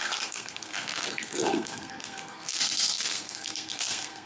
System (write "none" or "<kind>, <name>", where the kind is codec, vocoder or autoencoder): codec, SNAC